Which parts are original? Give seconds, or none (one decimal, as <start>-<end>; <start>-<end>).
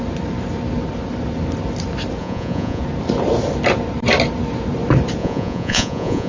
0.0-2.2; 2.8-5.2